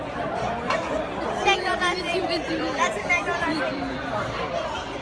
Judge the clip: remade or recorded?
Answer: remade